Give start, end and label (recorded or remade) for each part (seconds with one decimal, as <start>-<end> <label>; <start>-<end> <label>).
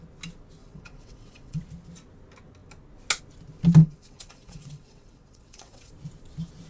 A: 0.0-0.6 recorded; 0.6-1.6 remade; 1.6-3.8 recorded; 3.8-5.9 remade; 5.9-6.7 recorded